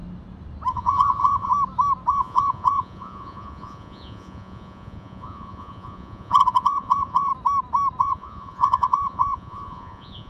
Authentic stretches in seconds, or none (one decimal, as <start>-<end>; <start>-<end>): 0.0-0.7; 1.5-2.1; 7.3-8.0